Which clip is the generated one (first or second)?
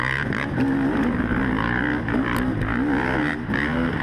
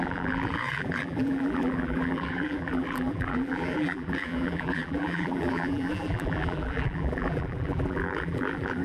second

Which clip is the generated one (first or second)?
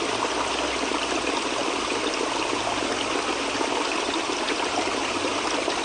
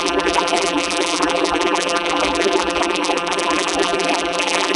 second